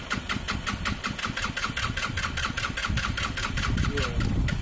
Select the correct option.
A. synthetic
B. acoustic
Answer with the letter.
B